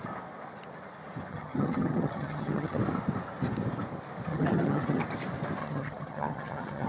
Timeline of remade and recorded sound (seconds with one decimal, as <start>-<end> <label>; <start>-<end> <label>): 0.0-1.3 recorded; 1.3-2.8 remade; 2.8-4.3 recorded; 4.3-5.0 remade; 5.0-5.6 recorded; 5.6-6.9 remade